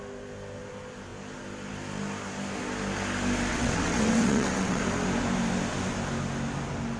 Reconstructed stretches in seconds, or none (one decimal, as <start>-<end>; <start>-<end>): 3.5-4.8